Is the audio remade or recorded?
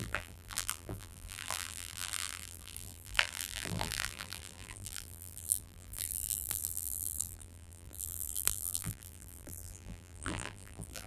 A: remade